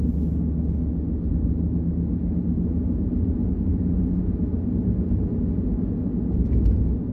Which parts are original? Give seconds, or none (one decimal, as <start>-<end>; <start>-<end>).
0.0-7.1